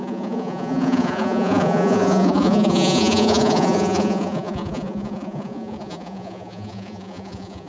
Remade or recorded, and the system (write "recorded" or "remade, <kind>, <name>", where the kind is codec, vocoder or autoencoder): remade, vocoder, Vocos